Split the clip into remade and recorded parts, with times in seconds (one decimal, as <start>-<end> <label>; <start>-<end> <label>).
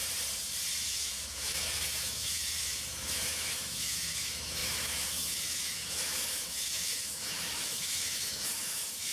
0.0-0.9 recorded; 0.9-9.1 remade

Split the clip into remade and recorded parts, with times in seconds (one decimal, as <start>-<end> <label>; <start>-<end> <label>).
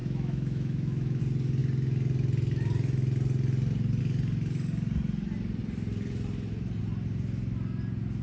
0.0-1.2 remade; 1.2-8.2 recorded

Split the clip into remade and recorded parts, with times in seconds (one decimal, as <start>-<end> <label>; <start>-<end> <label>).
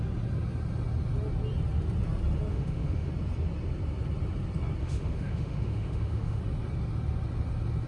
0.0-2.5 recorded; 2.5-3.1 remade; 3.1-4.8 recorded; 4.8-6.4 remade; 6.4-7.9 recorded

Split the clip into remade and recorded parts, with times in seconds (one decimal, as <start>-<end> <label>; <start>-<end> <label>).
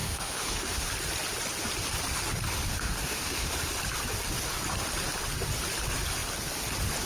0.0-0.9 remade; 0.9-2.7 recorded; 2.7-3.5 remade; 3.5-7.1 recorded